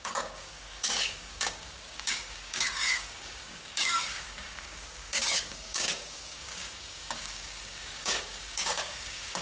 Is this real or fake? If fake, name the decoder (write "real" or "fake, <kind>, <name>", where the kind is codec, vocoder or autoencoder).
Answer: fake, codec, DAC